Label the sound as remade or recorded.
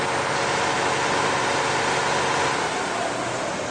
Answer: recorded